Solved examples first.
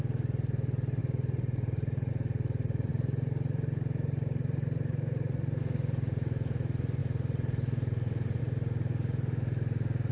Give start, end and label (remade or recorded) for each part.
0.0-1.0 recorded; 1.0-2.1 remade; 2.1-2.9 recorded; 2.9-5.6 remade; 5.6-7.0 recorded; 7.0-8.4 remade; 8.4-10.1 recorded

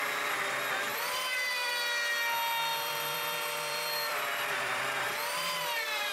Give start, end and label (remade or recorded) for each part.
0.0-0.9 recorded; 0.9-1.7 remade; 1.7-2.7 recorded; 2.7-6.1 remade

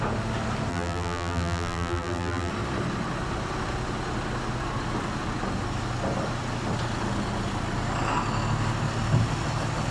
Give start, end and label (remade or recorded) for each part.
0.0-0.7 recorded; 0.7-2.5 remade; 2.5-9.9 recorded

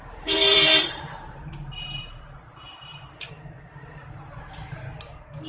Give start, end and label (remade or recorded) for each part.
0.0-3.3 remade; 3.3-5.5 recorded